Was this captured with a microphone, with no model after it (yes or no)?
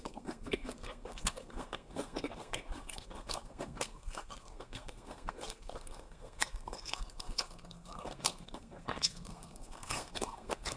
no